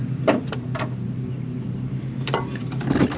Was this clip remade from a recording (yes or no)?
yes